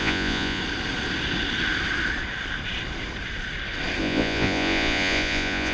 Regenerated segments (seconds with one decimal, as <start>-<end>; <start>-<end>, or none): 0.0-0.6; 4.0-5.7